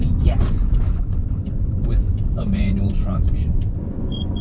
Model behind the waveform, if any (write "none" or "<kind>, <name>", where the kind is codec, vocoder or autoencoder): vocoder, Vocos